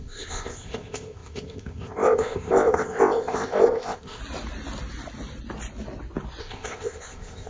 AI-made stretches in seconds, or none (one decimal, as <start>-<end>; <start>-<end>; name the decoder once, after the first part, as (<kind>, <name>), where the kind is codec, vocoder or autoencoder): 0.0-4.2 (codec, ZipCodec); 6.4-7.5